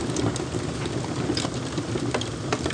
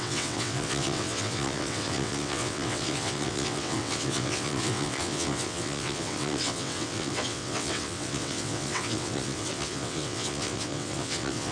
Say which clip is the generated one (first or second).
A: second